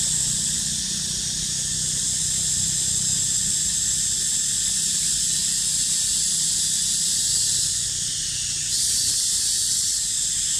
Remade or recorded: recorded